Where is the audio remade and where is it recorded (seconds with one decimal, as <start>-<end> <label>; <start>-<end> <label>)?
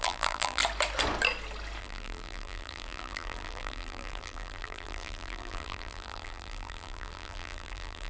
0.0-0.6 remade; 0.6-1.8 recorded; 1.8-8.1 remade